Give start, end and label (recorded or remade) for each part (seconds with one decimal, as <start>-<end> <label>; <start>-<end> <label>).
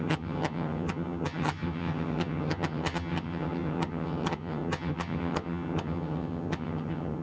0.0-7.2 remade